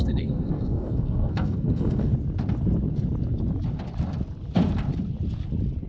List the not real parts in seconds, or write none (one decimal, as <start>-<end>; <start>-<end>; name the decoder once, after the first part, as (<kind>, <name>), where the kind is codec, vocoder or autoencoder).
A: 0.0-2.1 (codec, SNAC)